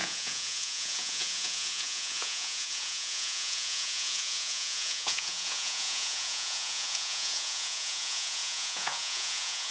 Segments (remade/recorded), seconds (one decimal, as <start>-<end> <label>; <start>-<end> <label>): 0.0-9.7 remade

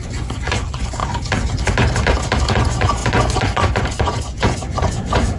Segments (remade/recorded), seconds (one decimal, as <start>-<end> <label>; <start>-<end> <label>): 0.0-1.0 remade; 1.0-2.5 recorded; 2.5-5.4 remade

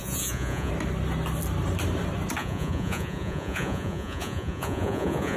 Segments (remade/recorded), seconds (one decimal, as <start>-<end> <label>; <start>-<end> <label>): 0.0-0.7 remade; 0.7-2.4 recorded; 2.4-5.4 remade

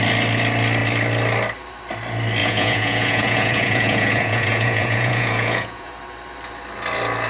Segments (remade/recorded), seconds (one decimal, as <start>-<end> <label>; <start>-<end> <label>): 0.0-2.4 recorded; 2.4-5.9 remade; 5.9-7.3 recorded

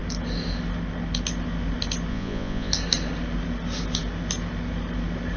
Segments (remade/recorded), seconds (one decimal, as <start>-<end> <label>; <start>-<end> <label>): 0.0-2.1 recorded; 2.1-2.7 remade; 2.7-5.4 recorded